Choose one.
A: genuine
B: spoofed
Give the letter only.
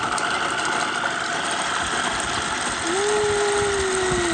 A